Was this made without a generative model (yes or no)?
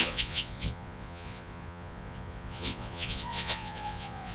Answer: no